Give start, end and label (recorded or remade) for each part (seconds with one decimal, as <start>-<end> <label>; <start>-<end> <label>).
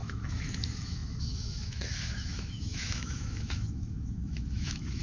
0.0-5.0 remade